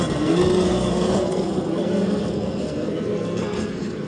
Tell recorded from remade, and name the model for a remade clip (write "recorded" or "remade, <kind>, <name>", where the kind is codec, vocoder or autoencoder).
remade, codec, SNAC